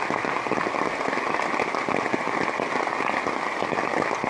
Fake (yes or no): no